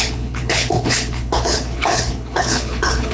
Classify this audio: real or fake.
fake